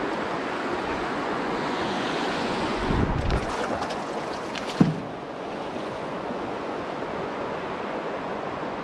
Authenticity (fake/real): fake